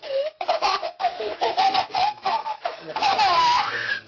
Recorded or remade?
remade